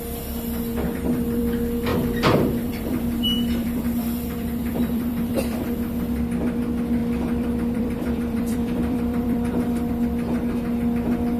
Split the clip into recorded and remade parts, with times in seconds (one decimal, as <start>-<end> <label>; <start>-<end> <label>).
0.0-1.9 recorded; 1.9-5.6 remade; 5.6-7.0 recorded; 7.0-9.9 remade; 9.9-11.4 recorded